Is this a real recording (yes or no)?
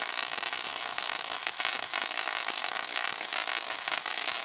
no